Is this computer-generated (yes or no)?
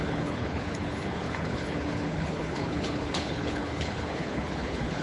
yes